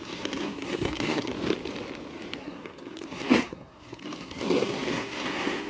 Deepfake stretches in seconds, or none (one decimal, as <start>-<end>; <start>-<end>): 0.0-1.3; 2.4-5.7